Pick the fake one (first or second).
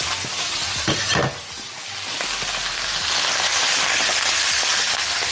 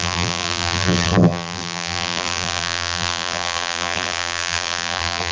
second